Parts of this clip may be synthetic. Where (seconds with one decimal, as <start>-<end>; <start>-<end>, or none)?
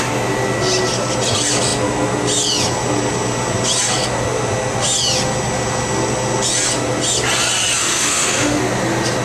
7.8-8.6